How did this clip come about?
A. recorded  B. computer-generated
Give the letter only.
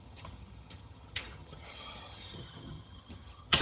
B